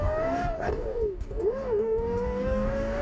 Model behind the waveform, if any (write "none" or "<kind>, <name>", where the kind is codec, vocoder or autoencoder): codec, DAC